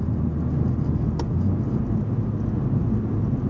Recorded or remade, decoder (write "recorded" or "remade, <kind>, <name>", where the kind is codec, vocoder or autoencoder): recorded